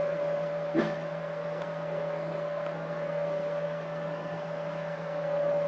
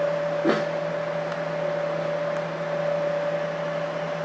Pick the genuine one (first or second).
second